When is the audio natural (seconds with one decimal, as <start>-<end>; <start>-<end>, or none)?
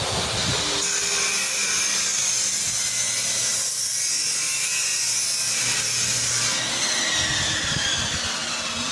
0.0-8.9